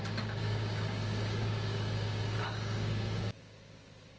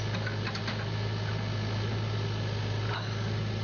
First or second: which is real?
second